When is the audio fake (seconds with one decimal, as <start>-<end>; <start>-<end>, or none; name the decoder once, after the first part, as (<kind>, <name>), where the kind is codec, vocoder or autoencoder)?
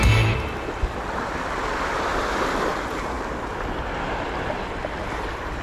none